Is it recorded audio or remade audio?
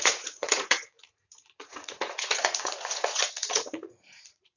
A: remade